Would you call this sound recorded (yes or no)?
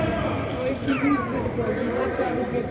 no